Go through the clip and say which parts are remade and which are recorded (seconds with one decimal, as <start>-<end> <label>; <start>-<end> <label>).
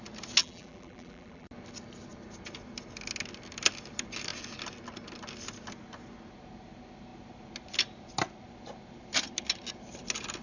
0.0-0.4 recorded; 0.4-1.5 remade; 1.5-10.4 recorded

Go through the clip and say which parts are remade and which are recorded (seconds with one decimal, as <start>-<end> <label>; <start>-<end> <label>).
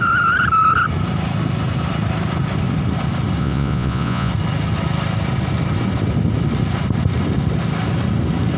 0.0-3.4 recorded; 3.4-4.3 remade; 4.3-8.6 recorded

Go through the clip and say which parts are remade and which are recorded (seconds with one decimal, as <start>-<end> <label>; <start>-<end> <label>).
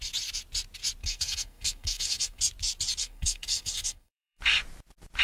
0.0-1.0 recorded; 1.0-2.4 remade; 2.4-3.0 recorded; 3.0-4.4 remade; 4.4-5.2 recorded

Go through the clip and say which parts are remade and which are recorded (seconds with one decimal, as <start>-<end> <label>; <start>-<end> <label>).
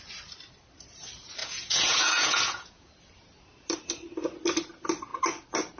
0.0-1.4 recorded; 1.4-2.9 remade; 2.9-5.8 recorded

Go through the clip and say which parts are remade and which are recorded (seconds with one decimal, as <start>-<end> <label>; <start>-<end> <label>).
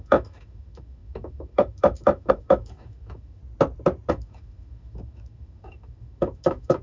0.0-3.4 remade; 3.4-4.1 recorded; 4.1-6.8 remade